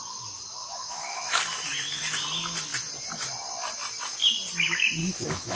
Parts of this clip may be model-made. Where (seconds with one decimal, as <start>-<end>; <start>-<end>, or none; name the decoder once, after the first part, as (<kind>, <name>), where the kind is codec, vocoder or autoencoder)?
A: 0.6-1.4 (autoencoder, DAC-VAE); 5.0-5.6